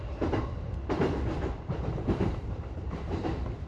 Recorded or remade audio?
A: remade